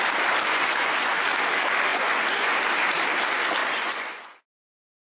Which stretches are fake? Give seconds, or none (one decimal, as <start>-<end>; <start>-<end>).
0.5-1.1; 1.9-2.6; 3.6-4.4